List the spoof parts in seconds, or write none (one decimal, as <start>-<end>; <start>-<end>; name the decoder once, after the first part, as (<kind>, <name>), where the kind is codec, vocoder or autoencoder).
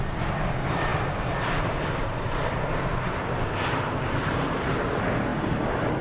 4.2-4.7 (vocoder, BigVGAN v2); 5.3-6.0